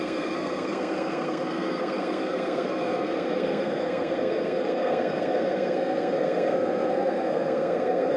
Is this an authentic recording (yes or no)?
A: no